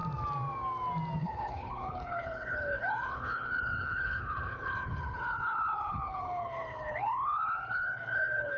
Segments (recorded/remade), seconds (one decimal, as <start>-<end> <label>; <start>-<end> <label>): 0.0-1.2 recorded; 1.2-8.6 remade